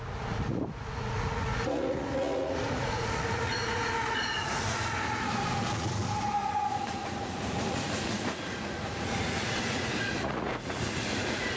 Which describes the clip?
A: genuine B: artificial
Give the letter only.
B